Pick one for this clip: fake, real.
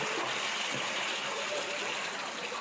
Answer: real